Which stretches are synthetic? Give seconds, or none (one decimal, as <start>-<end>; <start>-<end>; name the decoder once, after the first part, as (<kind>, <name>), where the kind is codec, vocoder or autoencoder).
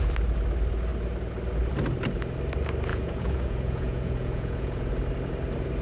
2.9-4.9 (vocoder, Vocos)